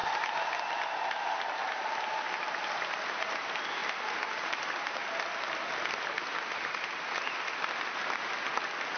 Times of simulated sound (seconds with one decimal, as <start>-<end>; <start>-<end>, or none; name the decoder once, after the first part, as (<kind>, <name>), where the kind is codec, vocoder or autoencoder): 0.0-3.8 (vocoder, BigVGAN v2); 4.5-9.0